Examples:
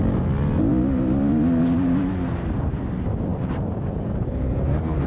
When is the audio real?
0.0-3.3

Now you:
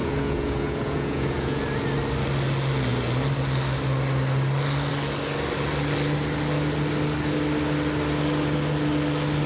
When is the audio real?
1.6-9.5

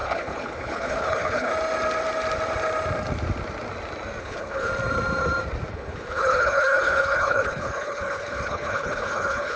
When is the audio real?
1.5-4.2; 4.7-5.7

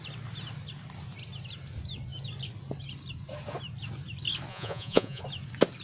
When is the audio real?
0.0-4.5; 5.2-5.8

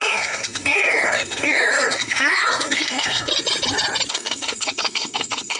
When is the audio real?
3.3-4.1

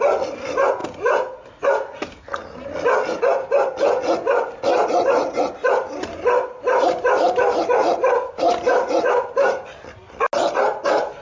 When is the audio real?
0.0-4.7; 8.9-11.2